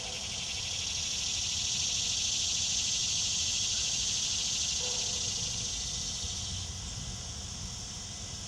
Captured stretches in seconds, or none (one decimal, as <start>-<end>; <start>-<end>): 0.0-3.0; 4.4-8.5